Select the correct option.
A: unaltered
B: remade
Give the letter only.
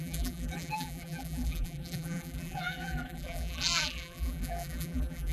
B